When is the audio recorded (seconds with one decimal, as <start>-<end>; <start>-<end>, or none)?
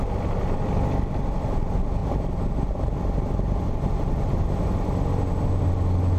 0.0-6.2